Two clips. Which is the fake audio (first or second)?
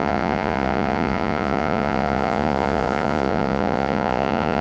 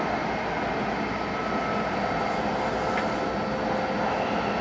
first